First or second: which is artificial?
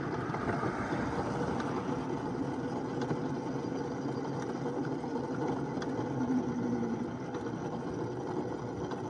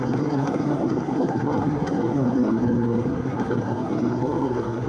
second